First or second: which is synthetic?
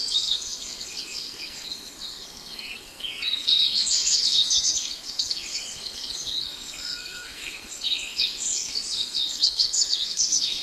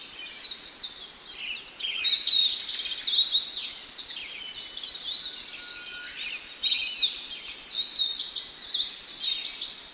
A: first